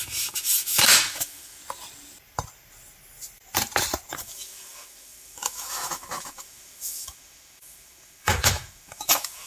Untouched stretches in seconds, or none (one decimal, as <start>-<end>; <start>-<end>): 1.6-4.2